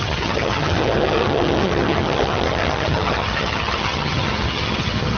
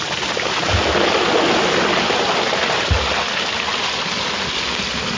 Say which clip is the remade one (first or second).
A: first